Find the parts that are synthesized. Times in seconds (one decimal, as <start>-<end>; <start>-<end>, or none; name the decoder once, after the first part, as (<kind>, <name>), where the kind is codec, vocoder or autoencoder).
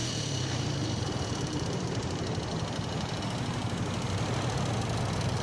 0.0-3.2 (vocoder, BigVGAN v2)